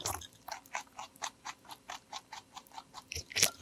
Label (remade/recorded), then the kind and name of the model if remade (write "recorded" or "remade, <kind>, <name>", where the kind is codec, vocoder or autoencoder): remade, vocoder, BigVGAN v2